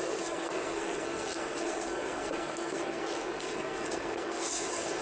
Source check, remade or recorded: remade